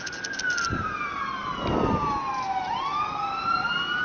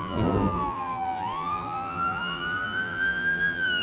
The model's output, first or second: second